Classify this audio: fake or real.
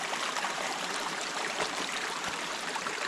fake